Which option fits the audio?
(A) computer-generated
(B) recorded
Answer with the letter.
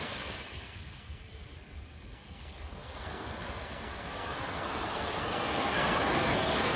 A